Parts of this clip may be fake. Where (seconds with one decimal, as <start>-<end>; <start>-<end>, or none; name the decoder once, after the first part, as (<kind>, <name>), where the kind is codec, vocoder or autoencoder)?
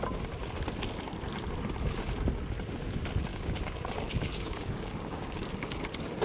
3.3-5.8 (codec, DAC)